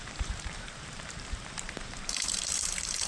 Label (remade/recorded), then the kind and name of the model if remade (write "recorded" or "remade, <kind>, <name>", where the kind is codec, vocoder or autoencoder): remade, vocoder, BigVGAN v2